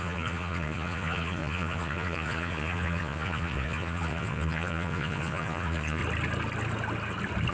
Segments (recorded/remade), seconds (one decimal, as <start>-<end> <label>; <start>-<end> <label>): 0.0-6.0 remade; 6.0-7.5 recorded